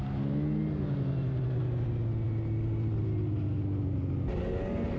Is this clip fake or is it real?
real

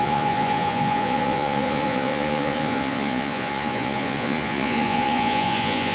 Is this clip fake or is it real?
fake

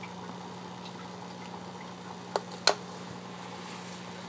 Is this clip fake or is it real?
real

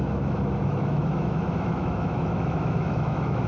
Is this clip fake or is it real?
fake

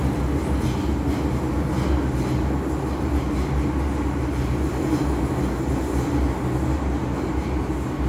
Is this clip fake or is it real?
real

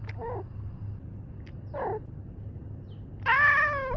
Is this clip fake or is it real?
real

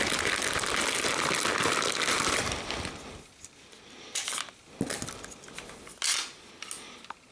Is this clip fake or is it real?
real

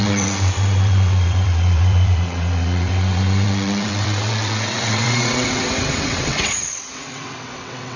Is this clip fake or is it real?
fake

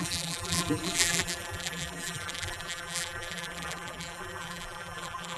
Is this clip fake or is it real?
fake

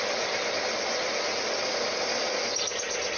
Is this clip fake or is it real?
real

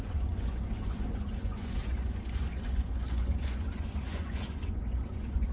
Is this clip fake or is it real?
fake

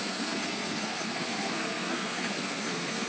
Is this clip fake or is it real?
fake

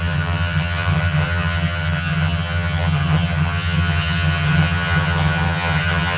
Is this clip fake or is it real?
fake